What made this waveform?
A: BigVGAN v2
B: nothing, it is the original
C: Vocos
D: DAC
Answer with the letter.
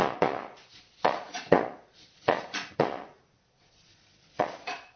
C